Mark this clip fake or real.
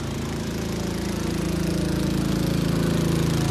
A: real